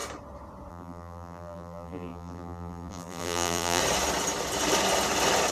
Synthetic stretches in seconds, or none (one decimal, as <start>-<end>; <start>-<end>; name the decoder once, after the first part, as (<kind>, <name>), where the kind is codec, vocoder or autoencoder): 0.7-3.8 (vocoder, BigVGAN v2)